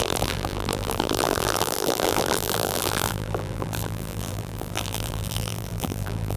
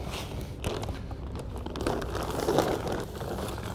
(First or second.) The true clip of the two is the second